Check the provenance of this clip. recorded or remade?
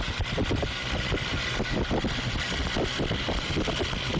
recorded